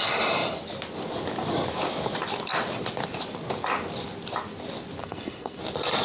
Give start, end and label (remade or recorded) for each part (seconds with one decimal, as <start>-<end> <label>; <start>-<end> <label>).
0.0-5.0 recorded; 5.0-5.6 remade; 5.6-6.0 recorded